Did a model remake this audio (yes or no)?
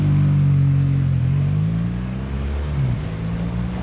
no